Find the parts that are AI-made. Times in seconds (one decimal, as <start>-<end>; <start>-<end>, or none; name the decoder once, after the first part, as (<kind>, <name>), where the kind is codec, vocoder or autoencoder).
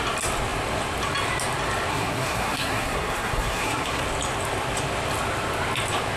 1.9-4.0 (codec, SNAC)